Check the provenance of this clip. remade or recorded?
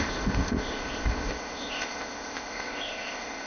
remade